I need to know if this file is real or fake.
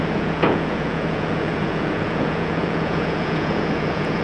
fake